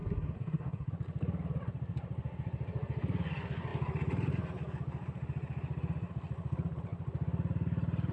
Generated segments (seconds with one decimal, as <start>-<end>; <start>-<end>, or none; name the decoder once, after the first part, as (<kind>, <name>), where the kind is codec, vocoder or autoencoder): 0.0-0.9 (codec, SNAC)